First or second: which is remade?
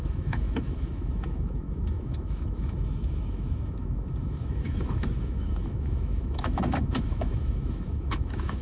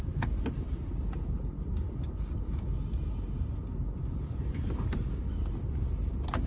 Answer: first